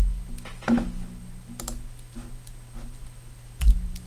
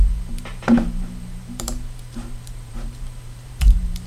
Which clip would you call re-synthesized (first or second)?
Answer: second